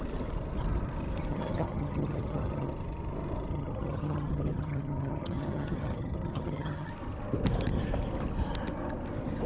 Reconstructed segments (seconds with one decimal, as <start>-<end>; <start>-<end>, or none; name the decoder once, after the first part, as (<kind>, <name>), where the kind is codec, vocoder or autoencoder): 1.3-2.7 (vocoder, HiFi-GAN); 3.5-6.9